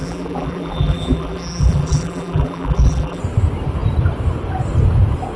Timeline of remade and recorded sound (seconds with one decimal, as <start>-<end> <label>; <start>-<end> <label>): 0.0-3.2 remade; 3.2-5.4 recorded